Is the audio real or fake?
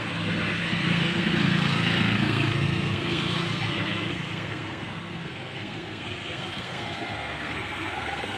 fake